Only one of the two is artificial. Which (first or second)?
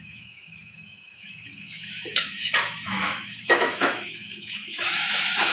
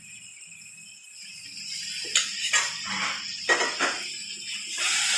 first